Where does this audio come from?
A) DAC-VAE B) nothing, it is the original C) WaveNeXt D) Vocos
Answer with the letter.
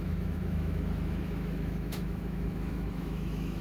A